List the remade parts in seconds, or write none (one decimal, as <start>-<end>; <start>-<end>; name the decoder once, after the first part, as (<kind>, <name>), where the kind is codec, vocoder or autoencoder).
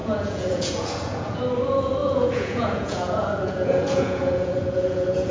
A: 0.0-1.4 (vocoder, Vocos); 2.0-5.3